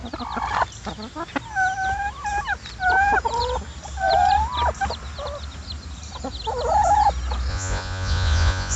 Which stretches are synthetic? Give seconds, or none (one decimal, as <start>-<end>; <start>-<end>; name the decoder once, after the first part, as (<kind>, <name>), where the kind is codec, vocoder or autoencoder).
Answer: 7.5-8.8 (vocoder, Vocos)